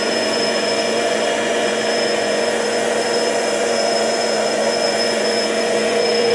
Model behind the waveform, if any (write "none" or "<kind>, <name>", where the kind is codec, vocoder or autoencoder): vocoder, Vocos